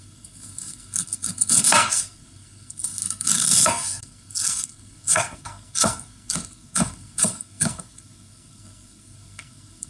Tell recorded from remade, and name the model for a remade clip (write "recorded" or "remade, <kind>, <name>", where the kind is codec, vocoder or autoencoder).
remade, codec, SNAC